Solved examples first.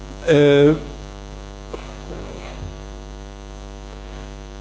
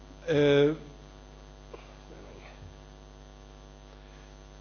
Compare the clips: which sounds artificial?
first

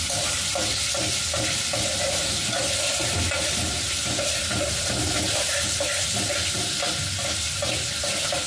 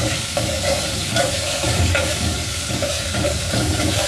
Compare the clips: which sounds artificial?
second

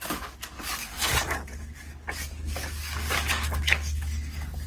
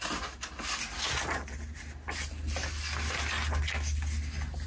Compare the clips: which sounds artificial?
first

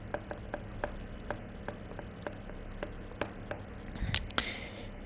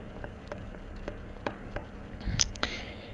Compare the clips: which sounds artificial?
second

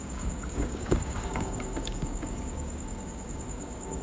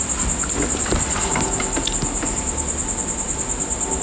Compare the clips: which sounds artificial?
first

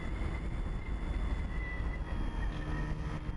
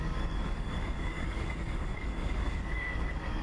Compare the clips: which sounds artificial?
second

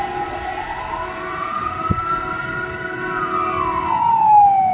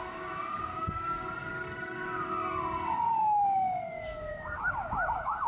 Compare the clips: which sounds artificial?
second